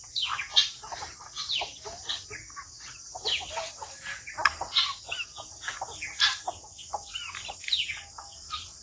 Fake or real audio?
real